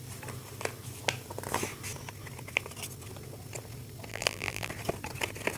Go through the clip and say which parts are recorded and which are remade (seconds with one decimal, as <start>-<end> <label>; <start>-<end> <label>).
0.0-4.1 recorded; 4.1-4.7 remade; 4.7-5.6 recorded